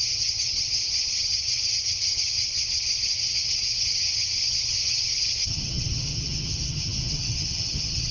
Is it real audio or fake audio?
fake